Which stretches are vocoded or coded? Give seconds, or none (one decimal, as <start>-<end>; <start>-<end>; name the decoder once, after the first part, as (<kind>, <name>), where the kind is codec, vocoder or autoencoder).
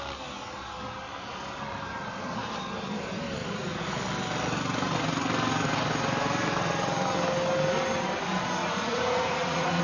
3.4-4.0 (vocoder, Vocos); 8.6-9.8